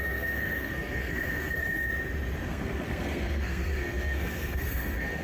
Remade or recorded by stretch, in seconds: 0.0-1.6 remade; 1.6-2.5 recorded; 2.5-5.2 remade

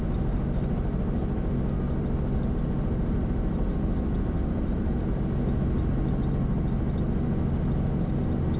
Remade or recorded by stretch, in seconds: 0.0-8.6 recorded

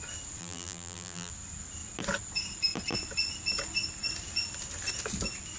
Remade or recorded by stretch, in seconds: 0.0-0.4 recorded; 0.4-1.3 remade; 1.3-5.6 recorded